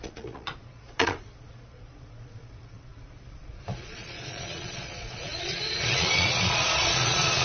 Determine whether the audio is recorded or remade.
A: remade